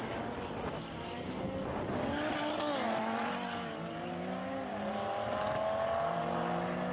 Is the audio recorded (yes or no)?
yes